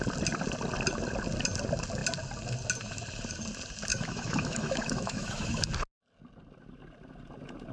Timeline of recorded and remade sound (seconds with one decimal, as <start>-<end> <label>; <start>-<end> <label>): 0.0-3.9 recorded; 3.9-5.7 remade; 5.7-7.7 recorded